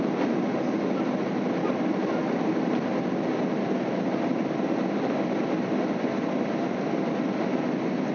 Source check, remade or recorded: recorded